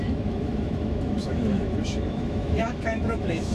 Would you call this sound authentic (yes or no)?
no